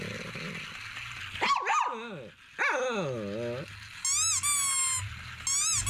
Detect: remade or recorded recorded